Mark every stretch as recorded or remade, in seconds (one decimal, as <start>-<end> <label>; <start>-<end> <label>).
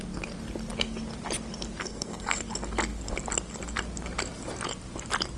0.0-1.8 recorded; 1.8-2.4 remade; 2.4-5.4 recorded